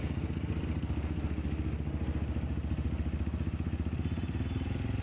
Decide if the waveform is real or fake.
real